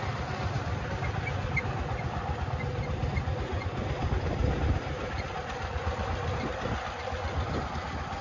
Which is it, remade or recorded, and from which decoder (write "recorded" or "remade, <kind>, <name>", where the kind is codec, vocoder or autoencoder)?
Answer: recorded